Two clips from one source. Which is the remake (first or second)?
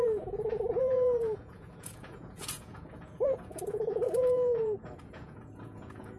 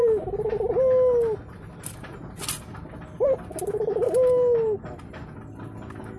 first